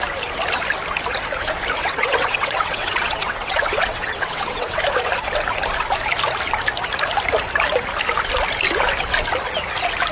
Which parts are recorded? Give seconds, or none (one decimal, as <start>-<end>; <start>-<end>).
0.0-1.8; 4.8-10.1